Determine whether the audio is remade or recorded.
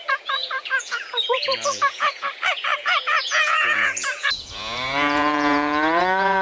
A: remade